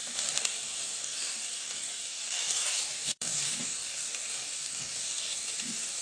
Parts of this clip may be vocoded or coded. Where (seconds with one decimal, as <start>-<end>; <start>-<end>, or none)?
0.0-6.0